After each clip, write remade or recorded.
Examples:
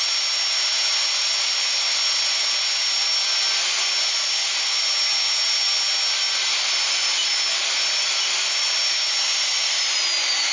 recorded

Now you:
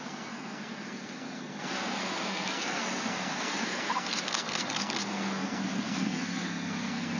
remade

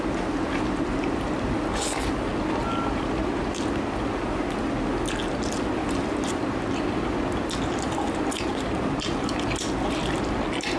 recorded